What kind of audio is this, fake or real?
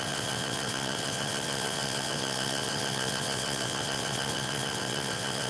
fake